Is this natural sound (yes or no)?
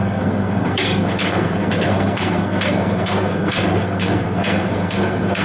no